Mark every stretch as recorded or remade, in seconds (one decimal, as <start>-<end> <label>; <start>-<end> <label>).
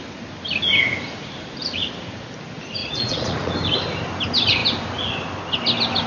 0.0-2.8 recorded; 2.8-3.5 remade; 3.5-6.1 recorded